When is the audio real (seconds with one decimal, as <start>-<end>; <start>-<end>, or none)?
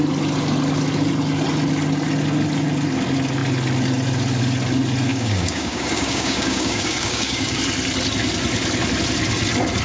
0.0-5.1; 7.6-9.8